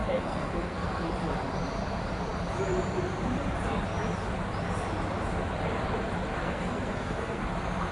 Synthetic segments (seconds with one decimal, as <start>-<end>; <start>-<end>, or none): 0.0-1.1; 6.4-7.4